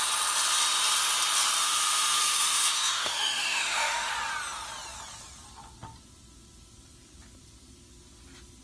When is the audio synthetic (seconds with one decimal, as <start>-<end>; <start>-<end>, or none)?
1.6-4.1